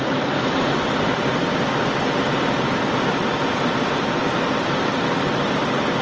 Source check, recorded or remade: recorded